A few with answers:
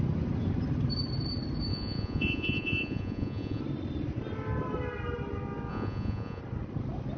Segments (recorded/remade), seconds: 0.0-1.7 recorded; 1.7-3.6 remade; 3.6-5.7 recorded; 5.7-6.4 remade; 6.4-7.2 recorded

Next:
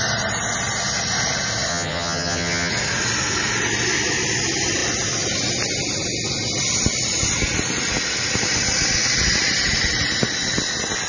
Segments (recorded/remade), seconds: 0.0-1.7 recorded; 1.7-2.7 remade; 2.7-11.1 recorded

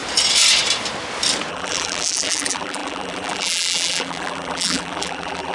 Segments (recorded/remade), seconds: 0.0-1.5 recorded; 1.5-5.5 remade

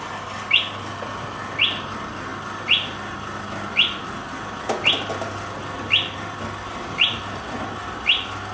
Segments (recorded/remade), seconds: 0.0-8.5 recorded